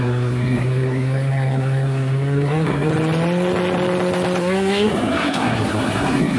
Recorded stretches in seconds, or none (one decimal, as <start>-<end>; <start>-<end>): 2.9-4.4